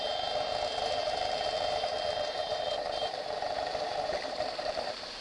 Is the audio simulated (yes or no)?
yes